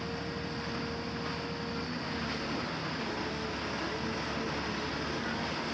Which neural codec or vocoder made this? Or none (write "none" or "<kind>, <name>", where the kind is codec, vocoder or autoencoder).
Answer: none